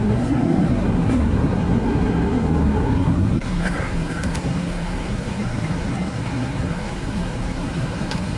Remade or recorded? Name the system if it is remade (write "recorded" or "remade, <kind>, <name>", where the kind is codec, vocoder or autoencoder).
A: remade, codec, SNAC